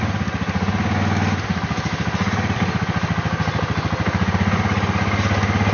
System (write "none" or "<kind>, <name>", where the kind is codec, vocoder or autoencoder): none